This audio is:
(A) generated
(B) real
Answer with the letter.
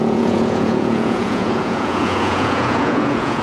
A